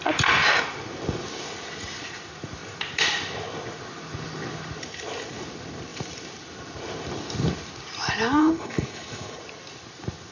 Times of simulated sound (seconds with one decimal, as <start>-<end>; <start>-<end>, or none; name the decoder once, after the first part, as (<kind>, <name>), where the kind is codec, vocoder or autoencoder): 8.4-9.4 (codec, HILCodec)

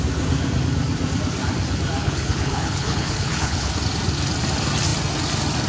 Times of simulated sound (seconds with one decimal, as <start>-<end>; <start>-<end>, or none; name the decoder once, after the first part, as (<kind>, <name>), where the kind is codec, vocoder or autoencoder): 2.0-3.7 (codec, HILCodec)

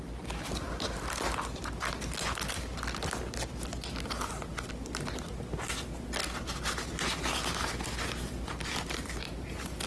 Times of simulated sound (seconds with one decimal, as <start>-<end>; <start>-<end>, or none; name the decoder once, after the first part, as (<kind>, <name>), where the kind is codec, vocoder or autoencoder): none